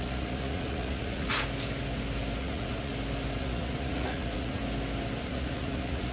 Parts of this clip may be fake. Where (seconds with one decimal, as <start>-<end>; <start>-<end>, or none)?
0.0-1.3; 2.4-2.9; 3.4-4.6; 5.2-6.1